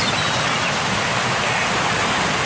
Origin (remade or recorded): recorded